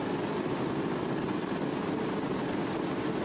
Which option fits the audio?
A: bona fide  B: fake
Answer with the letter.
A